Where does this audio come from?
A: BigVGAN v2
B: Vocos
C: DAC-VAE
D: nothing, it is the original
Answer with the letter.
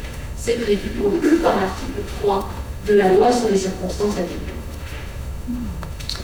C